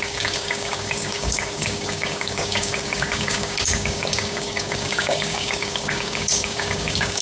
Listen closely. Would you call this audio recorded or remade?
remade